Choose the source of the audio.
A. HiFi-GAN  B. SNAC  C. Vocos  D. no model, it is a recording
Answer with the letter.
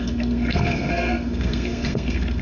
B